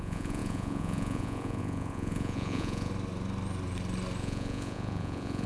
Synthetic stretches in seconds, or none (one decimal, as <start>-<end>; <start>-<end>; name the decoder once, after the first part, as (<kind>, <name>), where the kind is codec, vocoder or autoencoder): 0.0-2.9 (vocoder, Vocos); 4.2-5.5

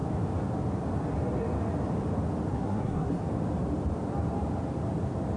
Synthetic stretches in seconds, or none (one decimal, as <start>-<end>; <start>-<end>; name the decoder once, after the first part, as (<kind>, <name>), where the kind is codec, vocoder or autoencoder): 2.5-3.2 (codec, SNAC)

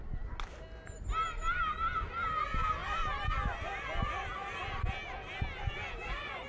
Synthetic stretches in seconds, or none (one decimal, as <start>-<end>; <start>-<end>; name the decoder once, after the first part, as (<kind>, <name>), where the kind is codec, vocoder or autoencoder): none

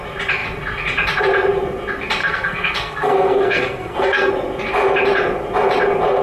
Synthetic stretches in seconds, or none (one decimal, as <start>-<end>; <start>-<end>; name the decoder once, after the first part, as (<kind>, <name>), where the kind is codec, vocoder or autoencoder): 2.2-4.3 (codec, SNAC)

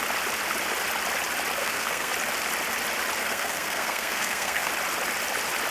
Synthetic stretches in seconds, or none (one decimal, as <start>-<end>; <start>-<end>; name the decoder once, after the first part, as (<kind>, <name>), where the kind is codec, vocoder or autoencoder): 1.6-2.1 (codec, SNAC); 3.2-4.7

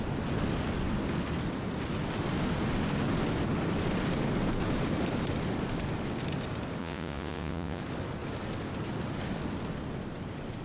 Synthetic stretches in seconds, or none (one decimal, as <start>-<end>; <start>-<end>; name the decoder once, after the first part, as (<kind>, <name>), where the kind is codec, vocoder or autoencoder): 6.8-7.8 (vocoder, Vocos)

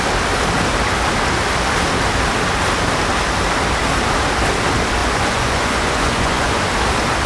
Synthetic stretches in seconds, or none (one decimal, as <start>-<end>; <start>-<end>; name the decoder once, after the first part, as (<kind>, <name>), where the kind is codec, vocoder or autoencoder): 5.0-6.7 (vocoder, Vocos)

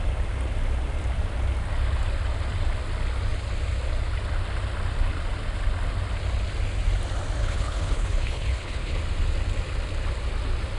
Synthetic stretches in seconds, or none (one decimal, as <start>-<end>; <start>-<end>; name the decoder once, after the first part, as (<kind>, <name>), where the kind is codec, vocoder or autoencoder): 7.4-9.0 (codec, HILCodec)